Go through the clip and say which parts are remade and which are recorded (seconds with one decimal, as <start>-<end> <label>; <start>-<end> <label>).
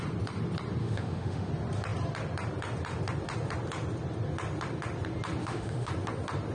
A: 0.0-0.8 recorded; 0.8-1.5 remade; 1.5-5.4 recorded; 5.4-5.9 remade; 5.9-6.5 recorded